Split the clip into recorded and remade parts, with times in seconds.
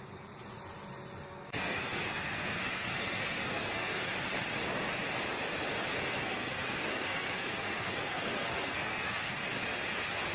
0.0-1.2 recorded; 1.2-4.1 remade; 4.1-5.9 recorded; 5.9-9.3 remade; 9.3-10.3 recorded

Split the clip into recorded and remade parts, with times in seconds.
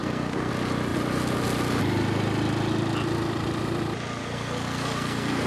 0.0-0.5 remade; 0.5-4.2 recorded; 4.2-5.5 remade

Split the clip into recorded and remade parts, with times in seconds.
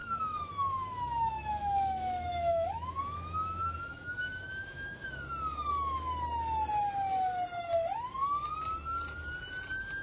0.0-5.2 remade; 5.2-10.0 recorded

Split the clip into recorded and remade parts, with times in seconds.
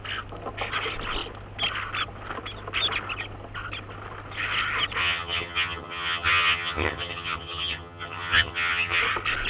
0.0-5.0 recorded; 5.0-9.0 remade; 9.0-9.5 recorded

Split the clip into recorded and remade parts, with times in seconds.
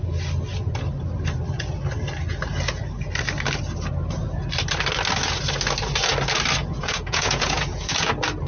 0.0-6.6 recorded; 6.6-8.1 remade; 8.1-8.5 recorded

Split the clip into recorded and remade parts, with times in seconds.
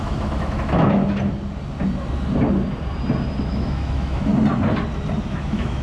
0.0-1.0 remade; 1.0-3.4 recorded; 3.4-4.3 remade; 4.3-5.3 recorded; 5.3-5.8 remade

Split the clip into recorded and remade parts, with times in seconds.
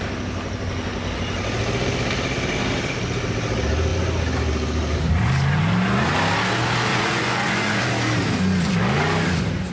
0.0-6.9 recorded; 6.9-7.8 remade; 7.8-9.7 recorded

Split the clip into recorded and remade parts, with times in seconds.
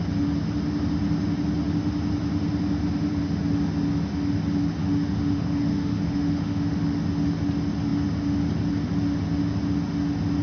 0.0-4.8 recorded; 4.8-6.7 remade; 6.7-10.4 recorded